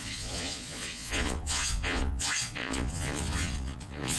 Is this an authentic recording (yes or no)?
no